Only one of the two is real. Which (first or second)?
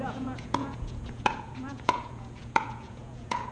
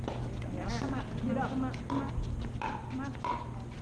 second